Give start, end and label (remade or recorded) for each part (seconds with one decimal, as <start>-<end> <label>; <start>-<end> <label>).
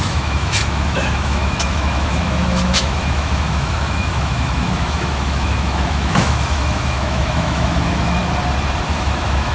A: 0.0-8.2 remade; 8.2-8.9 recorded; 8.9-9.5 remade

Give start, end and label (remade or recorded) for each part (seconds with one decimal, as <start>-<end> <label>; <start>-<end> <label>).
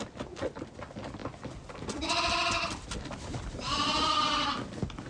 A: 0.0-5.1 recorded